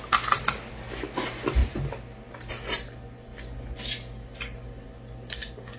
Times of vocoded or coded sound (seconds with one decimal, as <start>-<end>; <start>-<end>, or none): none

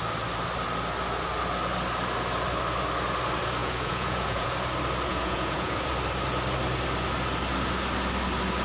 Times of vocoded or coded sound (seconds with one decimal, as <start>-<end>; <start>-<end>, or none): 3.6-4.5; 5.1-5.9

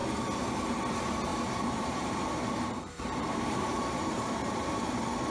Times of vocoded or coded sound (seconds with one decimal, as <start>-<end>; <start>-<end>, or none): 1.3-4.5

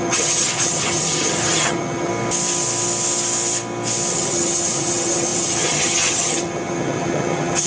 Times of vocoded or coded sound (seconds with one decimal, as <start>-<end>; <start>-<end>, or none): 0.0-2.1; 4.1-7.7